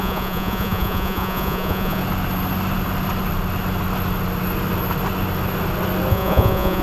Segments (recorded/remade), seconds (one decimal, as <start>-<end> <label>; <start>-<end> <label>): 0.0-2.0 remade; 2.0-6.1 recorded; 6.1-6.8 remade